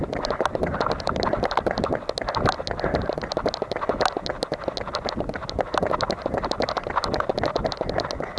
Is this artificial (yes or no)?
no